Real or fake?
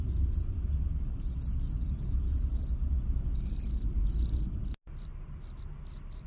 real